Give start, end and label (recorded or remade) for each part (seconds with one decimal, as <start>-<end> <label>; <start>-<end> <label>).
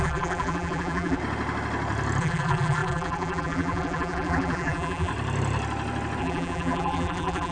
0.0-1.2 remade; 1.2-2.2 recorded; 2.2-5.1 remade; 5.1-6.2 recorded; 6.2-7.5 remade